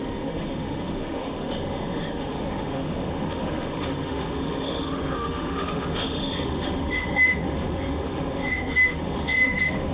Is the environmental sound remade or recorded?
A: remade